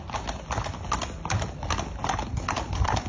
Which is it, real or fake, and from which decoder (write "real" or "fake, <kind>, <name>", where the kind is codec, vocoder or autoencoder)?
real